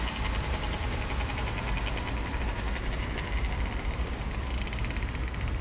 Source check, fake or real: fake